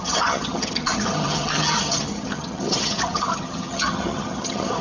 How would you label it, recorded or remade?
remade